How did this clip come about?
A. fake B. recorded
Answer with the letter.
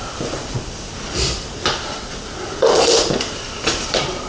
A